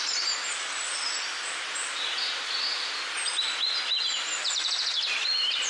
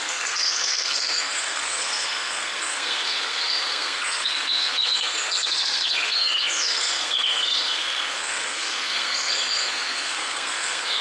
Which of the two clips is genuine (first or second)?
first